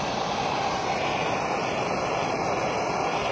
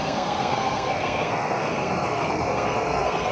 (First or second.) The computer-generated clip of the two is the second